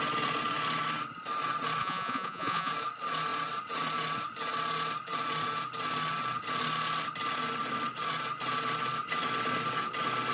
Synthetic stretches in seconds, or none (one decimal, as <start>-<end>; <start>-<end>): 1.8-2.7